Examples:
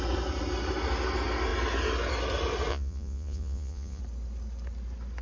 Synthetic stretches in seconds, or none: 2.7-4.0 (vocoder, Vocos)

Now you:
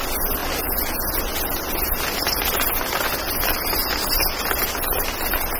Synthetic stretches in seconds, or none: none

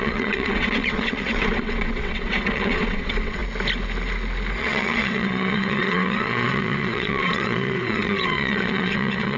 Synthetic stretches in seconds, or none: 0.0-3.4 (vocoder, WaveNeXt); 4.6-9.4

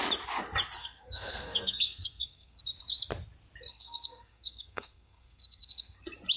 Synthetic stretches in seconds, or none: 0.8-2.6 (codec, SNAC); 3.7-6.0

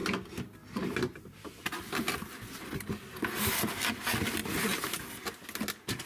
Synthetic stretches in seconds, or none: none

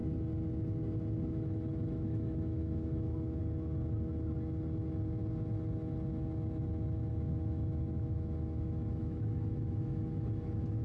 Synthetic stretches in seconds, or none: 1.2-3.4 (autoencoder, DAC-VAE); 7.1-10.8

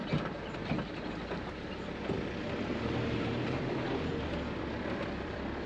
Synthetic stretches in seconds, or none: none